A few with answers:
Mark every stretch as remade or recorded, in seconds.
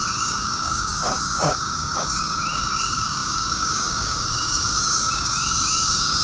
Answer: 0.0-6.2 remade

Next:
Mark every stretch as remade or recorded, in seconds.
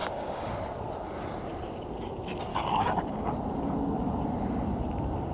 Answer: 0.0-0.5 remade; 0.5-2.5 recorded; 2.5-3.3 remade; 3.3-5.3 recorded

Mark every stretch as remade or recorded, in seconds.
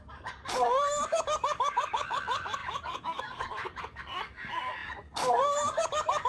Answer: 0.0-6.3 remade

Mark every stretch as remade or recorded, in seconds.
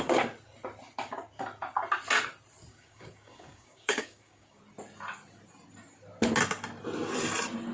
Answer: 0.0-2.7 recorded; 2.7-4.6 remade; 4.6-7.7 recorded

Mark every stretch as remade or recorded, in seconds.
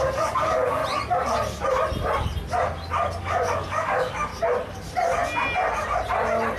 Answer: 0.0-0.8 remade; 0.8-3.2 recorded; 3.2-4.3 remade; 4.3-6.6 recorded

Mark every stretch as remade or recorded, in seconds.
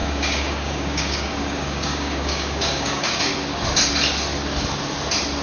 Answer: 0.0-3.2 remade; 3.2-5.4 recorded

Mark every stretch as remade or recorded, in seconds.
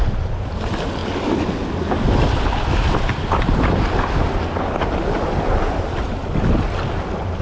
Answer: 0.0-7.4 recorded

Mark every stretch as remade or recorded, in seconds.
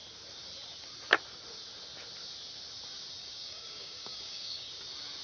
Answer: 0.0-3.2 recorded; 3.2-4.7 remade; 4.7-5.2 recorded